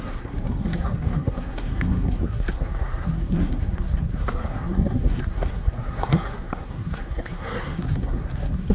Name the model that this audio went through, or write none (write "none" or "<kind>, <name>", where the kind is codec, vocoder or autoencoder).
codec, SNAC